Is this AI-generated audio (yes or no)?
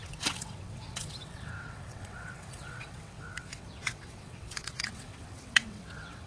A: yes